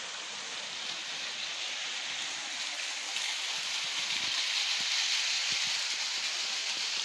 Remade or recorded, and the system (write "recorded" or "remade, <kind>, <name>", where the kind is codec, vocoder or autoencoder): remade, vocoder, BigVGAN v2